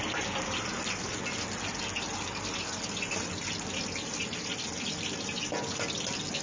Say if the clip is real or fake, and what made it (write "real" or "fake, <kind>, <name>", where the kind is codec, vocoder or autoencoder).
real